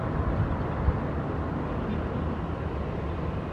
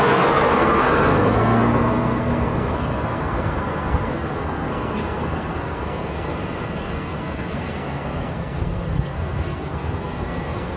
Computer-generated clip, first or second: second